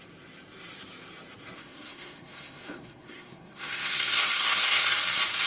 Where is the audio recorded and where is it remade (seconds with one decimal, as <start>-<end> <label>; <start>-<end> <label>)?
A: 0.0-1.6 recorded; 1.6-4.9 remade; 4.9-5.5 recorded